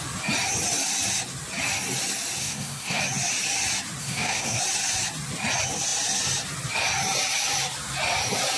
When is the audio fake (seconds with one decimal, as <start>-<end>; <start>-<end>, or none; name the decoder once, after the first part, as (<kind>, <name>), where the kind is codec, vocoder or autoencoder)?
2.4-3.0 (codec, SNAC); 4.0-4.6